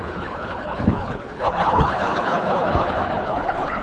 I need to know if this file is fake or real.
fake